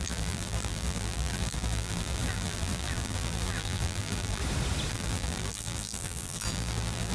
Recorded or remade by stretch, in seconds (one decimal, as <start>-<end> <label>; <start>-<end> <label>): 0.0-4.4 remade; 4.4-4.9 recorded; 4.9-7.1 remade